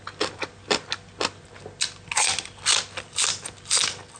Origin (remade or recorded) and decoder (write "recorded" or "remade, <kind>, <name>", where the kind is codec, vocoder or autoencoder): recorded